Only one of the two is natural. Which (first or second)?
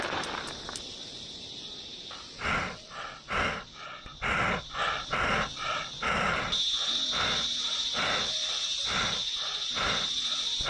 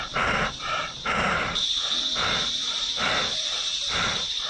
first